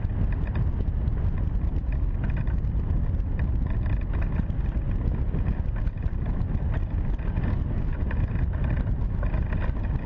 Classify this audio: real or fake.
real